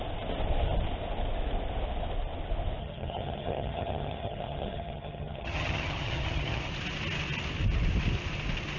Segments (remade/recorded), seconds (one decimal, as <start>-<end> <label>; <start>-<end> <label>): 0.0-2.8 recorded; 2.8-6.7 remade; 6.7-8.8 recorded